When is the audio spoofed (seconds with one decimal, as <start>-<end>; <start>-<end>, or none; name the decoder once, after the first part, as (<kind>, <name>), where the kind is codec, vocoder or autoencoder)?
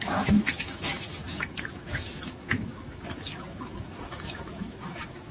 0.0-5.3 (autoencoder, DAC-VAE)